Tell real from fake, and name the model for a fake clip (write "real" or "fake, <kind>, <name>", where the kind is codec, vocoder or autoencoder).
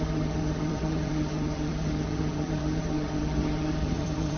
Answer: fake, vocoder, HiFi-GAN